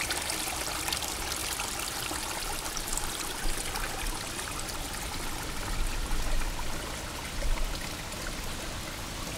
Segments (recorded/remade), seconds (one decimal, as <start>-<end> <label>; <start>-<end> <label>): 0.0-9.4 recorded